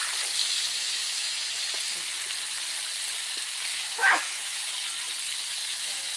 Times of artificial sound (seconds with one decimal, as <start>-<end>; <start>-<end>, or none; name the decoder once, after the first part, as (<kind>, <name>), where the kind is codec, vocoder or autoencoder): 0.4-1.5 (autoencoder, DAC-VAE); 3.7-4.7; 5.6-6.2